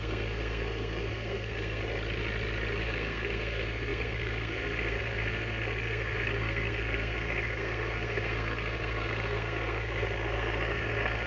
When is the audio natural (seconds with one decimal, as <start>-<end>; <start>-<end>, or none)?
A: 1.8-2.8